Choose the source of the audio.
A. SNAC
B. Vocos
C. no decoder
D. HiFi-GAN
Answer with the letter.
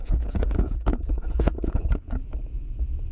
B